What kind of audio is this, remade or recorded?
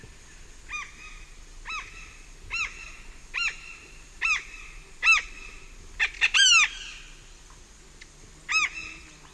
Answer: recorded